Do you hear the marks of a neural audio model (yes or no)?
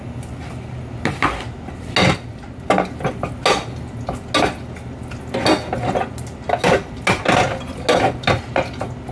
no